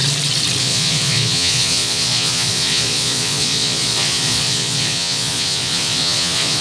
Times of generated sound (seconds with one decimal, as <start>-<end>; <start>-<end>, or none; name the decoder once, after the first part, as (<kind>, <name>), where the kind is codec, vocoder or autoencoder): 0.6-6.6 (vocoder, Vocos)